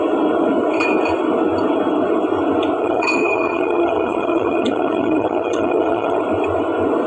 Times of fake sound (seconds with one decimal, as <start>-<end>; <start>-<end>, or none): 2.8-6.2